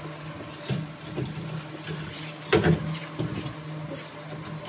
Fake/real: real